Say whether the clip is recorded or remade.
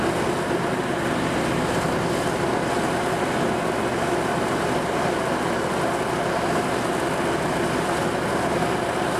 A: recorded